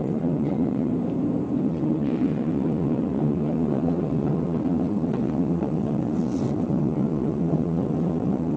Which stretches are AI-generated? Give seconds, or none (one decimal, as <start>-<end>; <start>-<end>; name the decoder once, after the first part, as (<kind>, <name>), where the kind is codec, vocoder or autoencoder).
0.0-0.9 (vocoder, WaveNeXt); 1.6-8.6